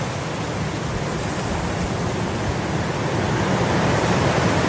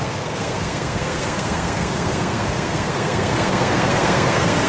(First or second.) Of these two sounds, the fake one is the second